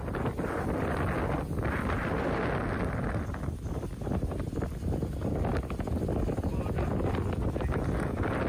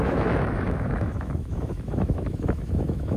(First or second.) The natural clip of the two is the first